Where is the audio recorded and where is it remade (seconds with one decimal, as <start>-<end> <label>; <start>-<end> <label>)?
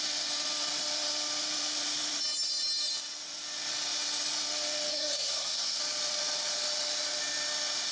0.0-4.9 recorded; 4.9-5.8 remade; 5.8-7.9 recorded